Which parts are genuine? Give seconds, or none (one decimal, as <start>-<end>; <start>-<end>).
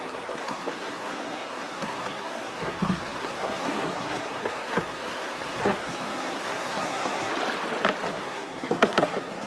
7.3-8.1